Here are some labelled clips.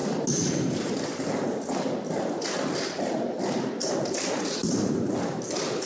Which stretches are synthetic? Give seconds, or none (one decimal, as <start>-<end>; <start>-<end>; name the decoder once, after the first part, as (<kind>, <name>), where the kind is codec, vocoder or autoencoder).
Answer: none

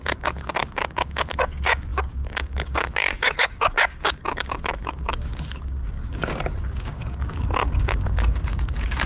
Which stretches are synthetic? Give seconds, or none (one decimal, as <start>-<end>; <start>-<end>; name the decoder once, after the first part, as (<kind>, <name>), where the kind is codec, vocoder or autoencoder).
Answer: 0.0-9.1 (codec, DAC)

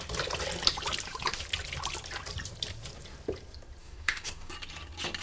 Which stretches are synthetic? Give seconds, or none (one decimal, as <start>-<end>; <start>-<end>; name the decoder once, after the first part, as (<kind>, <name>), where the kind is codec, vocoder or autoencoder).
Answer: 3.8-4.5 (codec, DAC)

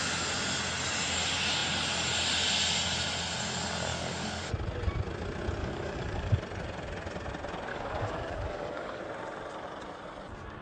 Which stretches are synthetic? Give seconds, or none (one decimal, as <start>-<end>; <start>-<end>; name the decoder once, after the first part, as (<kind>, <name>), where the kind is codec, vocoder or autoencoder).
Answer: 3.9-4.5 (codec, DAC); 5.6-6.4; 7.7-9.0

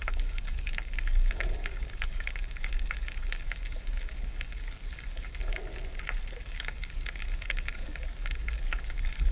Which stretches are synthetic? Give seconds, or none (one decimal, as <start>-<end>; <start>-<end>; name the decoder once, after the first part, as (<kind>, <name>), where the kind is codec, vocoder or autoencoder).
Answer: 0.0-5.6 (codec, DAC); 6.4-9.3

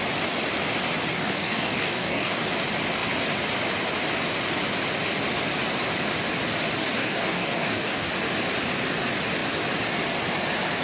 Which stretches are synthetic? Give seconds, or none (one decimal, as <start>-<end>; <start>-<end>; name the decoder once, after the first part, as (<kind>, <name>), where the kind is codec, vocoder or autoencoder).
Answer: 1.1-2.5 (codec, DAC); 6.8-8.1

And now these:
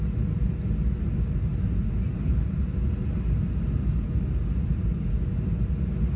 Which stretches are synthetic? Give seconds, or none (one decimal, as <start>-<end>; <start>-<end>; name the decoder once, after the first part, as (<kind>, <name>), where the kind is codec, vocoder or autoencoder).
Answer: none

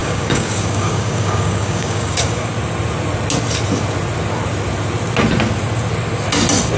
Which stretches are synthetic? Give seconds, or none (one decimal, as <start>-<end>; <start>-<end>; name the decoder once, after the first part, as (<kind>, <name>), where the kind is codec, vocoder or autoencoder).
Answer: 0.0-2.5 (codec, DAC)